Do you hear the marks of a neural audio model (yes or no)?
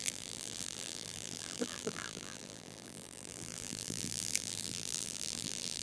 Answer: yes